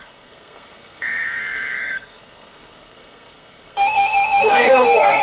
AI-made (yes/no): yes